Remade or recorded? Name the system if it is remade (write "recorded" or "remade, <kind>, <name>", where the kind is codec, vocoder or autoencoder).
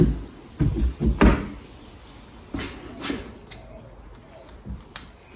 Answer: recorded